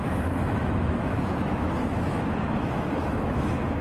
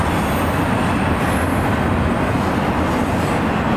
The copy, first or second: first